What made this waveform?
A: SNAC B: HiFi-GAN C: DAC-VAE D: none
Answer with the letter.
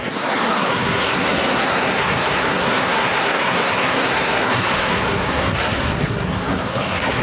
A